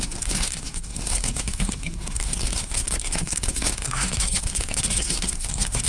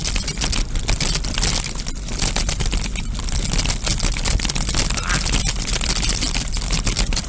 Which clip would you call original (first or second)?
second